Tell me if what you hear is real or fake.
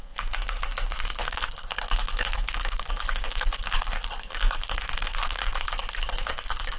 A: fake